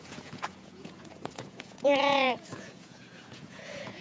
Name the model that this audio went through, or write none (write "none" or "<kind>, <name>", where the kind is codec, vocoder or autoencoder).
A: vocoder, Vocos